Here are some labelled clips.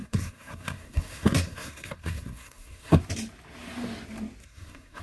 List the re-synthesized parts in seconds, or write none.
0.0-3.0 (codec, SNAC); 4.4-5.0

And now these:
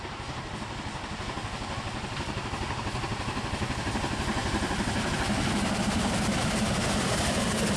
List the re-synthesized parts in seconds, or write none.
none